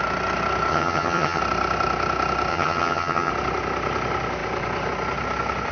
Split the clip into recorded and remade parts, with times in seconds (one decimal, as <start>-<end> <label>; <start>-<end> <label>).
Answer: 0.0-0.7 recorded; 0.7-1.4 remade; 1.4-2.5 recorded; 2.5-3.3 remade; 3.3-5.7 recorded